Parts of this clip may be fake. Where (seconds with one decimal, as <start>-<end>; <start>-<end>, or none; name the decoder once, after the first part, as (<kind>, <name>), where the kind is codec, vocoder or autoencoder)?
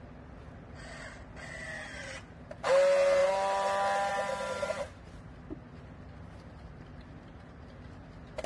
none